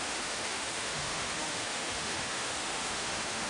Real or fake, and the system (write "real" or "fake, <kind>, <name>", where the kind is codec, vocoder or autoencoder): fake, autoencoder, DAC-VAE